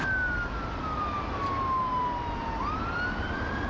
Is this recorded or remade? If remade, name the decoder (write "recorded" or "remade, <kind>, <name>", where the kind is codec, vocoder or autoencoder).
recorded